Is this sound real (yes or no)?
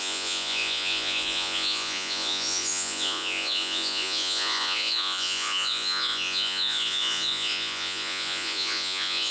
no